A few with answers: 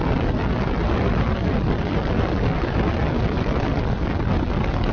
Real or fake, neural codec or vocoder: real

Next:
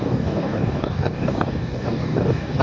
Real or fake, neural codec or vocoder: fake, codec, DAC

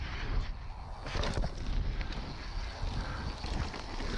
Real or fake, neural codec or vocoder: real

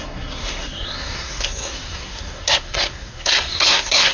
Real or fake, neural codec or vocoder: fake, codec, SNAC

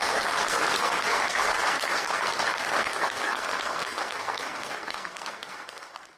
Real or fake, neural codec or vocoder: fake, codec, SNAC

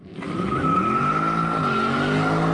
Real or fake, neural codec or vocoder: real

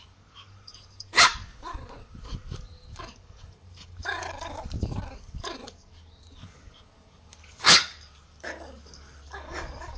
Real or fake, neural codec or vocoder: fake, codec, DAC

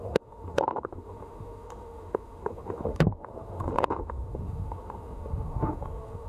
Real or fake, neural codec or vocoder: fake, autoencoder, DAC-VAE